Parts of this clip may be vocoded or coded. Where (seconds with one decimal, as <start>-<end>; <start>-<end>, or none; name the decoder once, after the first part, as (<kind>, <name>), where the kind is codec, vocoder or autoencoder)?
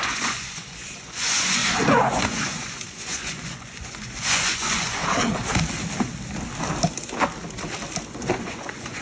0.0-5.0 (vocoder, Vocos); 8.1-9.0